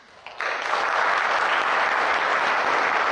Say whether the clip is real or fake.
real